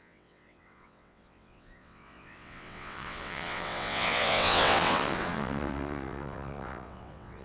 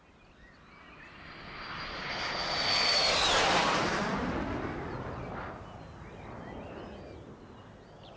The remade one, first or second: first